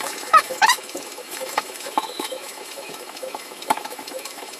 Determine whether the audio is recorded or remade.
remade